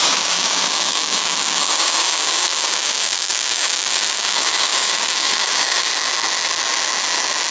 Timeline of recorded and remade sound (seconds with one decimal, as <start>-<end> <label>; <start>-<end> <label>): 0.0-5.9 remade; 5.9-7.5 recorded